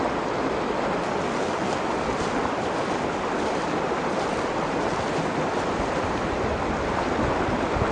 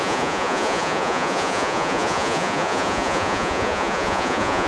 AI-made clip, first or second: second